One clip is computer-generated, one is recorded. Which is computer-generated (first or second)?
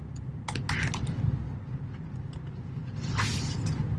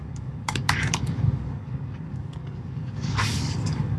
second